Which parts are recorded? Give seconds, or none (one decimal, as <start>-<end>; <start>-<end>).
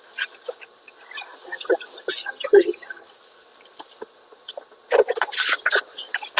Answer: 0.0-2.2; 3.1-6.4